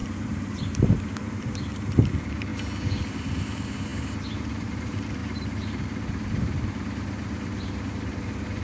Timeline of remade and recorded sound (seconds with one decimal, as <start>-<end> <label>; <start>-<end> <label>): 0.0-2.5 remade; 2.5-3.1 recorded; 3.1-8.6 remade

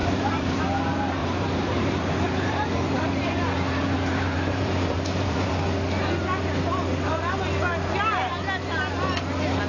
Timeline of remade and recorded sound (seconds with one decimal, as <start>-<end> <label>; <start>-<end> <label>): 0.0-0.6 remade; 0.6-1.2 recorded; 1.2-5.5 remade; 5.5-9.7 recorded